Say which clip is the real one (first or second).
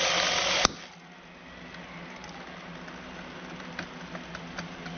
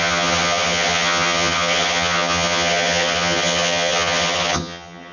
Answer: first